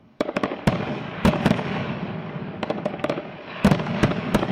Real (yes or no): no